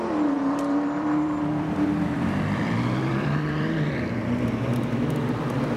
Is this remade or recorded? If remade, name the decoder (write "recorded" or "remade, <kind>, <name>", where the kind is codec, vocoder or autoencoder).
remade, vocoder, BigVGAN v2